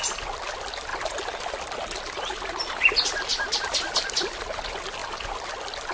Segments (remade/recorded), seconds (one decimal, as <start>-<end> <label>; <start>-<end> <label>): 0.0-5.9 recorded